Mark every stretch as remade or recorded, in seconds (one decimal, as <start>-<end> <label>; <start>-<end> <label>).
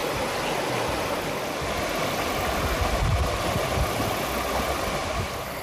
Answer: 0.0-5.6 recorded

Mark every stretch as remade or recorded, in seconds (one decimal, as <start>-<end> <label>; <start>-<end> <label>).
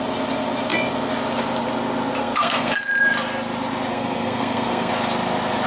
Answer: 0.0-2.2 recorded; 2.2-2.8 remade; 2.8-3.9 recorded; 3.9-4.9 remade; 4.9-5.7 recorded